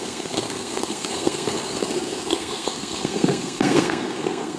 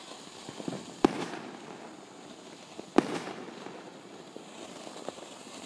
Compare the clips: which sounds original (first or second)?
second